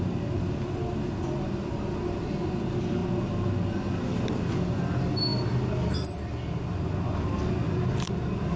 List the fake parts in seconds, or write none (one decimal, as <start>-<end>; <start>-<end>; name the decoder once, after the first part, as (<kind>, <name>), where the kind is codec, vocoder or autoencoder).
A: none